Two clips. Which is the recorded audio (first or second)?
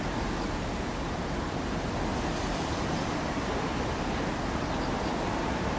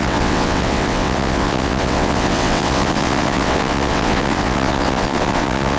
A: first